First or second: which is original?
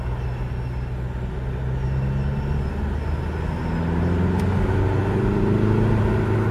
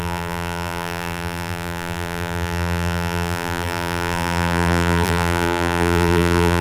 first